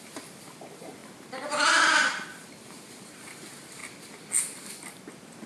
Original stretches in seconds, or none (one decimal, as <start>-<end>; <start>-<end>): 1.0-1.9; 3.8-5.1